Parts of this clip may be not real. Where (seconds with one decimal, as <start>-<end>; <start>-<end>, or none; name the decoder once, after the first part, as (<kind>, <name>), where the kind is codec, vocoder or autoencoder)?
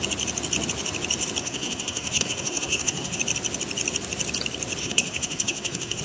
1.4-3.2 (codec, SNAC); 4.8-6.0